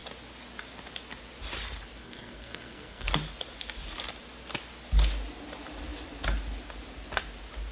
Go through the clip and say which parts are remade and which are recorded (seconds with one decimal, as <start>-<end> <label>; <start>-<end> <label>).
0.0-2.0 recorded; 2.0-3.1 remade; 3.1-7.7 recorded